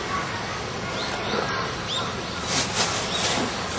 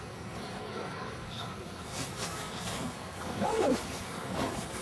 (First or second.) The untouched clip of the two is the first